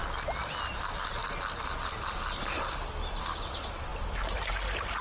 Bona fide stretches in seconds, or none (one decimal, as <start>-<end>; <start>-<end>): 0.0-5.0